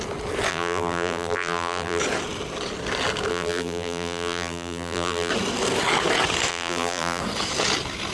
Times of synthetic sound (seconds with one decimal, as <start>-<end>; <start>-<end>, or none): 0.5-2.0; 3.3-5.3; 6.5-7.2